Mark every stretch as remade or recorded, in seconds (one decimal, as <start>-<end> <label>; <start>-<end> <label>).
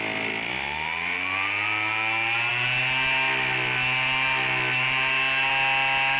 0.0-6.2 recorded